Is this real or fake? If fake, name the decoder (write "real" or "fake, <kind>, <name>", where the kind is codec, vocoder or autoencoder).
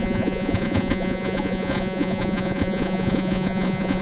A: fake, vocoder, Vocos